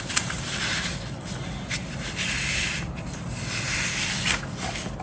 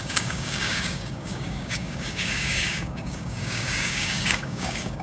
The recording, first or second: first